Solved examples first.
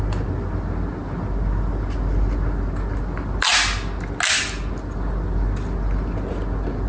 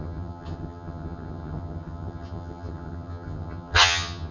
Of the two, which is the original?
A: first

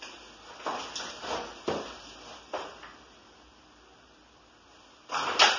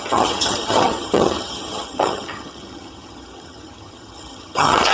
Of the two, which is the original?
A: first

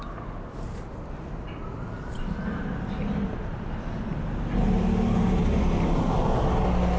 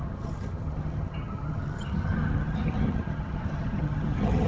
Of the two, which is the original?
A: first